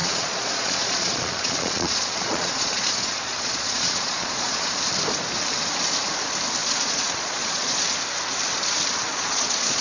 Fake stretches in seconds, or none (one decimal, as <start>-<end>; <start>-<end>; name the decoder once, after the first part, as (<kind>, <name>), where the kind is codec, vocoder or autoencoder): 0.0-4.8 (vocoder, Vocos); 6.6-7.8; 9.1-9.8